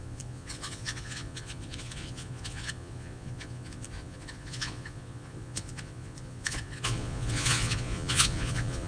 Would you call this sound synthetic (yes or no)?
yes